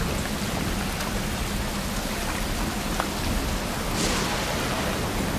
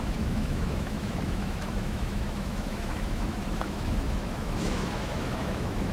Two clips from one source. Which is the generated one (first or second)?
second